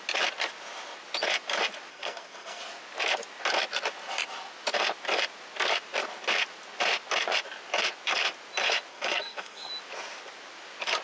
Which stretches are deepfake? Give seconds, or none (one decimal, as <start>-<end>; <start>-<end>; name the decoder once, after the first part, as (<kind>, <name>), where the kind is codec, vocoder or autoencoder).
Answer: 1.9-2.6 (codec, SNAC); 8.9-9.7